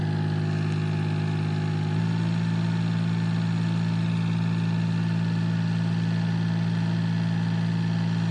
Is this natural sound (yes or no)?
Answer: yes